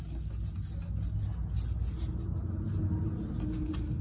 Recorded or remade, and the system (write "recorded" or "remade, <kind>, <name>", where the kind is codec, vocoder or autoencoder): recorded